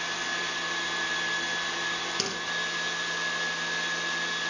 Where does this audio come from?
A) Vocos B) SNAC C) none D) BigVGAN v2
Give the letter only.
C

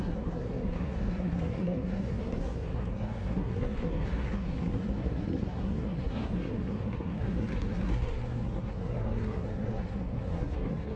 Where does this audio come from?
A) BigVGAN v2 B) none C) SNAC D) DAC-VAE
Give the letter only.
C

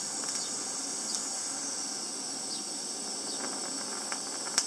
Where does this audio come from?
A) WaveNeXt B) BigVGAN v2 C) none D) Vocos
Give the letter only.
C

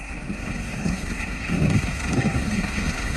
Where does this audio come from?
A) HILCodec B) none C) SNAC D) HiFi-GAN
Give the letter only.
C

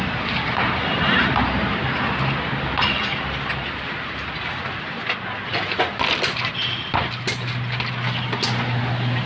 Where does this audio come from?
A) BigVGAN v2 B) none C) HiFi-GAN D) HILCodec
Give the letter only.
B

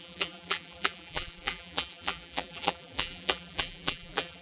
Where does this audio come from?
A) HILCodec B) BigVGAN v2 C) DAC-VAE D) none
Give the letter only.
B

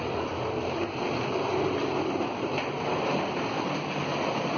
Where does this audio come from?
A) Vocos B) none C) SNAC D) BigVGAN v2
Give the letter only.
B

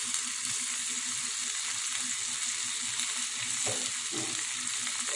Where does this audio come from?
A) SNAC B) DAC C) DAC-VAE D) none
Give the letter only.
D